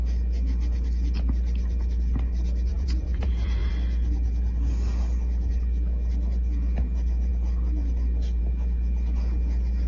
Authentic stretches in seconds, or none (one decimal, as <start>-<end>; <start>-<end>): 0.0-2.7; 3.7-9.9